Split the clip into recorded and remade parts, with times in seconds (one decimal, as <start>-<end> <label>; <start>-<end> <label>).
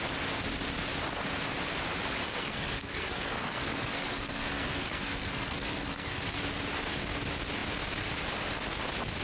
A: 0.0-2.2 recorded; 2.2-6.4 remade; 6.4-9.2 recorded